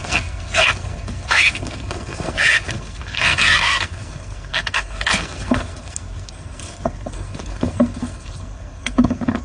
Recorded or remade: remade